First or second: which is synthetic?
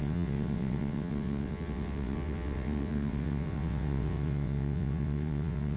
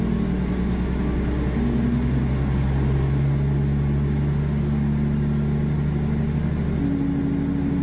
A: first